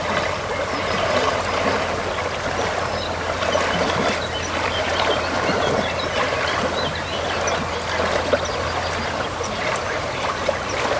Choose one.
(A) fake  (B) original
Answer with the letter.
B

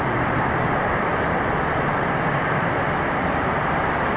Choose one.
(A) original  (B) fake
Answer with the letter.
B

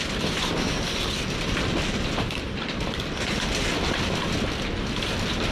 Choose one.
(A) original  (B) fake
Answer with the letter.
A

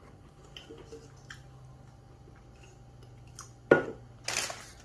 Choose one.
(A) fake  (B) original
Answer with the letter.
B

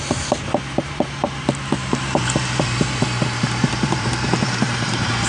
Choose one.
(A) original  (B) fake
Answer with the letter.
B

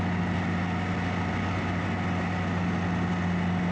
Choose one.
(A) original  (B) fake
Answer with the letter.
A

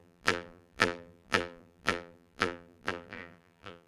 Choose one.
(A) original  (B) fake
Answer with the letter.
B